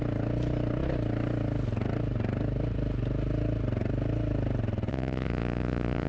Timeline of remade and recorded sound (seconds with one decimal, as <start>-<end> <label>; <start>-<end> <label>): 0.0-4.9 recorded; 4.9-6.1 remade